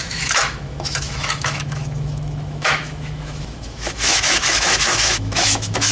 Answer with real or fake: fake